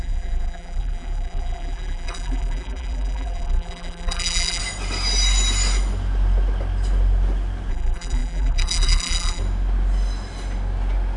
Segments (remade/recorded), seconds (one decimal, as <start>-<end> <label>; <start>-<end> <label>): 0.0-4.6 remade; 4.6-7.7 recorded; 7.7-9.4 remade; 9.4-11.2 recorded